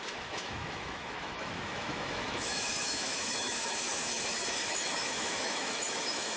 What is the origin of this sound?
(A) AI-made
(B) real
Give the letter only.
A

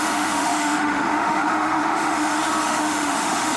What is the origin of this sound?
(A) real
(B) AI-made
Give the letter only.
B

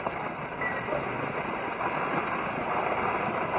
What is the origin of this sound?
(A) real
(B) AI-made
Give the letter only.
A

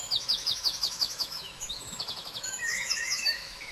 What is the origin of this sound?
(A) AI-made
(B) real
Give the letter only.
A